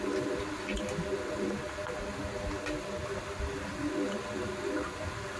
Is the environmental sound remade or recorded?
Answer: recorded